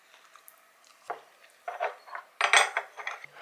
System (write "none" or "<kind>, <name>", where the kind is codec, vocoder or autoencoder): none